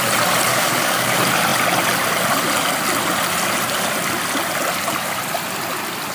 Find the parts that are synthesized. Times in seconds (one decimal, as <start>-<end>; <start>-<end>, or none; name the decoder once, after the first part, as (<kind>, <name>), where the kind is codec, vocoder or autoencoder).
0.5-1.1 (codec, DAC)